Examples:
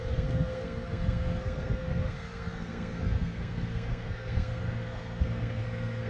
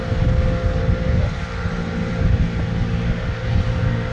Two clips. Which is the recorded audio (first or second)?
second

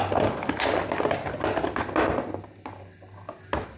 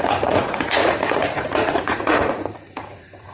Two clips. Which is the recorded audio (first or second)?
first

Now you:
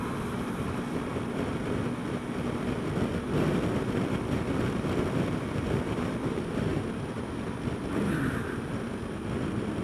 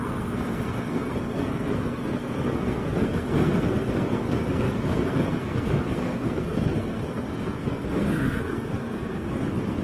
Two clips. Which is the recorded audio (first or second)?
first